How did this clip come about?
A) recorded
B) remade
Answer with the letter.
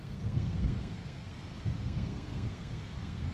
B